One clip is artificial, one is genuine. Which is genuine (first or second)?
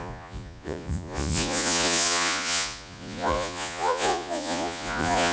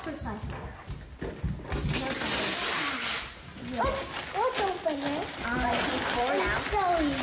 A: second